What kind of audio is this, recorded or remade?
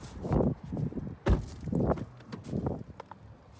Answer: recorded